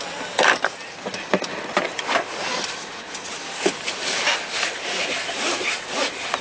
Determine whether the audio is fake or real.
real